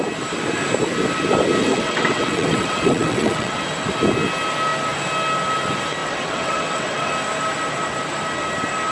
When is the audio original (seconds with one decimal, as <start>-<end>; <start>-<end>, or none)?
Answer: 0.0-1.7; 3.6-6.0; 7.1-8.9